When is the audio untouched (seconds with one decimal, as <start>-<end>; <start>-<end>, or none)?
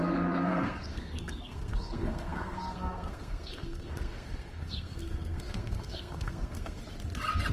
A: 6.8-7.5